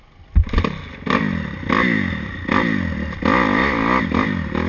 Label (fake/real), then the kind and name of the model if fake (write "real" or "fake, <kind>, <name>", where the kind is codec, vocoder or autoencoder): real